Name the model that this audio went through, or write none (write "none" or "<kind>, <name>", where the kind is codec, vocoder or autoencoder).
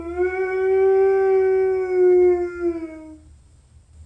none